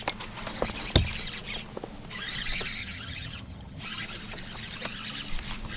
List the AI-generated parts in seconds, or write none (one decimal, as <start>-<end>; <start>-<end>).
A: 2.8-3.8